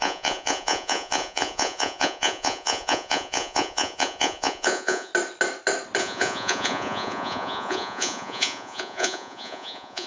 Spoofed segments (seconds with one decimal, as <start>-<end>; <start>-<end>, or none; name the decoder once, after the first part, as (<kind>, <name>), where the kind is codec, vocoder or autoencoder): 0.0-5.1 (vocoder, Vocos); 6.0-10.1